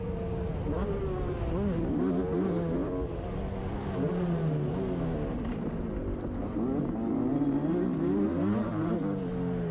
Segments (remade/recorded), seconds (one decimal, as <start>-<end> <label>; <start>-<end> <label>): 0.0-7.3 recorded; 7.3-8.7 remade; 8.7-9.7 recorded